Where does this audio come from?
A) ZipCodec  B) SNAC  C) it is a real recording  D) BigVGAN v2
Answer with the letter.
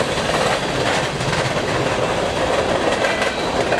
C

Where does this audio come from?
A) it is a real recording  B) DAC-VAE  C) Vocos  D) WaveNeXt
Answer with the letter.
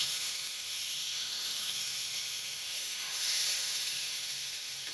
B